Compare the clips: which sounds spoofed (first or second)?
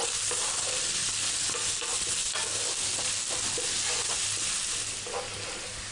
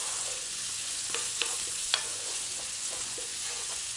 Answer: second